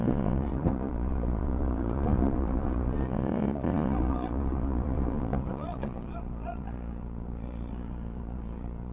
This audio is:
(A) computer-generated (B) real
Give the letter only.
A